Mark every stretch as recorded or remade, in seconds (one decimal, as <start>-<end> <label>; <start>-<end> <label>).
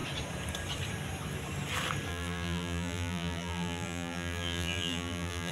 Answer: 0.0-2.1 recorded; 2.1-5.5 remade